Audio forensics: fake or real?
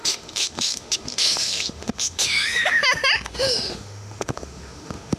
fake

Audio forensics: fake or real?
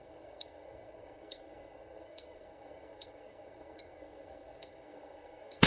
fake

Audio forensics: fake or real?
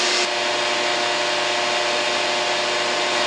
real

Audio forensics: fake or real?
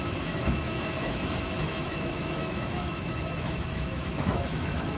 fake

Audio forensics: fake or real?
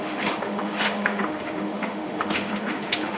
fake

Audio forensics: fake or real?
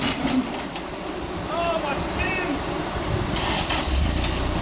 fake